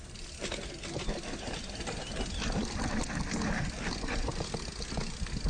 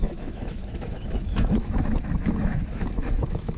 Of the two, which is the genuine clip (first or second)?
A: first